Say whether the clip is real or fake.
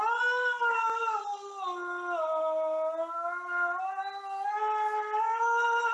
real